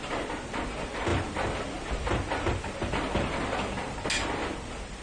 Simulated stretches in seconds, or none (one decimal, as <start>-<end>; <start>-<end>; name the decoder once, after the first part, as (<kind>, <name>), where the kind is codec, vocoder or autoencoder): none